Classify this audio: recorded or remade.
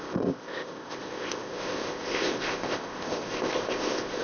remade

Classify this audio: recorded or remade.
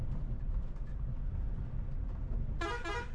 recorded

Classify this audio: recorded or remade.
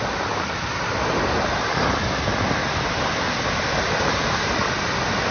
recorded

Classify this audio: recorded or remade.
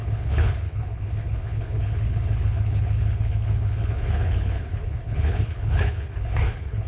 remade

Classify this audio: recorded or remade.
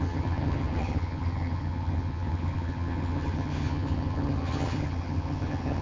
remade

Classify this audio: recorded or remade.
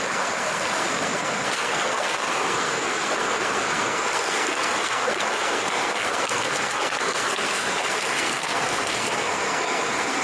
remade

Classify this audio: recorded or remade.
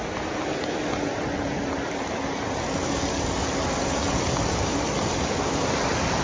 recorded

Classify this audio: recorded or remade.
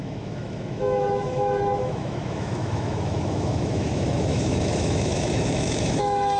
remade